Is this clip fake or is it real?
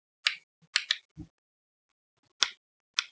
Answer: real